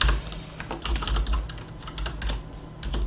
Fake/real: real